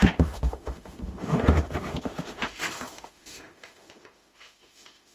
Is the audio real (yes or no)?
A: no